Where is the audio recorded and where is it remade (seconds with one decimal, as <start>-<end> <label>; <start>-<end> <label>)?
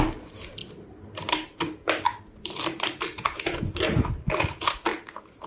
0.0-5.5 remade